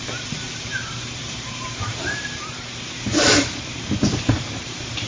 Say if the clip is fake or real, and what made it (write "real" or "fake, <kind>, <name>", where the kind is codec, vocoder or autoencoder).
fake, vocoder, BigVGAN v2